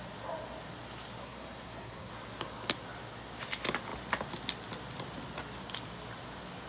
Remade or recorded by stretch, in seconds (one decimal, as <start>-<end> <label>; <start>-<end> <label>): 0.0-1.2 recorded; 1.2-2.1 remade; 2.1-6.7 recorded